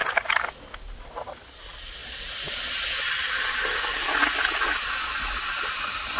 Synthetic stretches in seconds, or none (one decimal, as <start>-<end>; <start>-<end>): 0.0-0.5; 2.0-3.2

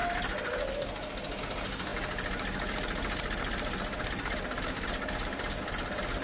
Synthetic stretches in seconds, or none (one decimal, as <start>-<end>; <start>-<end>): none

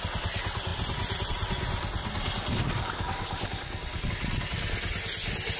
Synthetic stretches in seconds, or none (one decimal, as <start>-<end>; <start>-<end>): none

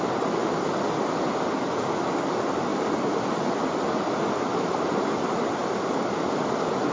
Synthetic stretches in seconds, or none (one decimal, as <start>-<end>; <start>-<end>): 2.7-3.5; 5.6-6.5

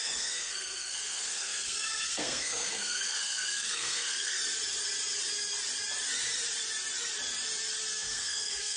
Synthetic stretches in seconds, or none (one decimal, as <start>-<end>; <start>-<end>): 0.0-4.4; 7.9-8.8

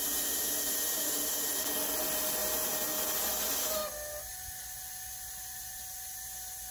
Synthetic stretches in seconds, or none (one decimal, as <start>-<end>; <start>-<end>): none

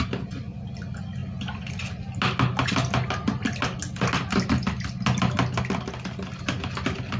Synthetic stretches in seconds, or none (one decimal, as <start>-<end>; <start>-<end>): none

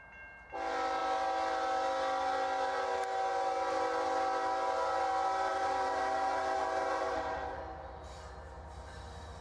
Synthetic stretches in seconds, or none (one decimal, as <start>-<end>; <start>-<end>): 5.5-7.6